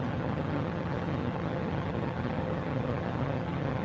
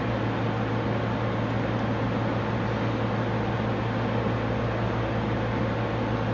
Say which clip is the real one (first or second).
second